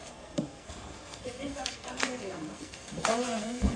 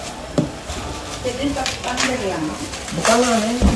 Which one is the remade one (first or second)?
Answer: first